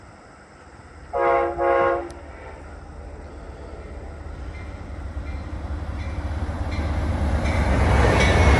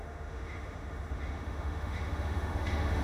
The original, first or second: first